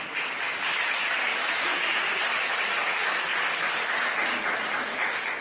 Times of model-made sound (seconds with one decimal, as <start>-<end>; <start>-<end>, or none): 1.3-2.0